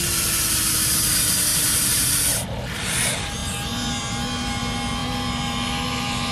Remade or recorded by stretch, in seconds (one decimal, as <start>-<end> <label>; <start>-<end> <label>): 0.0-1.5 recorded; 1.5-2.1 remade; 2.1-6.3 recorded

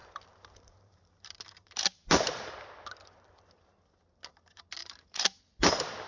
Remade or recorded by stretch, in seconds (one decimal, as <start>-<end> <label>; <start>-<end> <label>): 0.0-2.5 remade; 2.5-4.8 recorded; 4.8-5.4 remade; 5.4-6.1 recorded

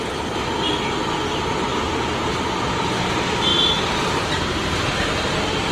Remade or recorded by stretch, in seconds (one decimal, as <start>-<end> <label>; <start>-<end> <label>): 0.0-1.7 recorded; 1.7-2.4 remade; 2.4-3.5 recorded; 3.5-5.7 remade

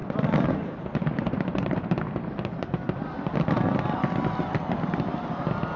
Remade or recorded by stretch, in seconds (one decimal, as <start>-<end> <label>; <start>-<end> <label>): 0.0-5.1 remade; 5.1-5.8 recorded